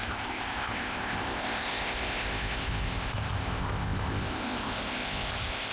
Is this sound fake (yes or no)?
yes